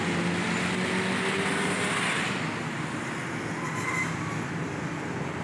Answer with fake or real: real